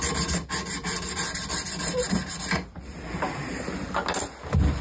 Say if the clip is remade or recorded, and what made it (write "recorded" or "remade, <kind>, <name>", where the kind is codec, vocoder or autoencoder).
recorded